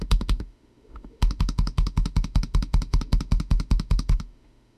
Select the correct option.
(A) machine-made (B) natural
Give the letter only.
A